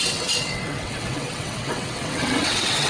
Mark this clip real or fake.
fake